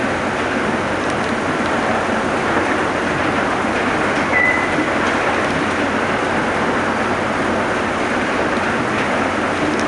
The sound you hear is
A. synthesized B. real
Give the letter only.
B